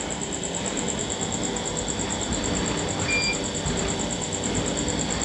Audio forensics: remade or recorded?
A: recorded